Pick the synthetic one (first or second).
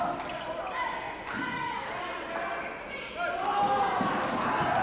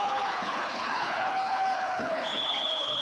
second